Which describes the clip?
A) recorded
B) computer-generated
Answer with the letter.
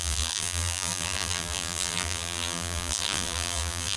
B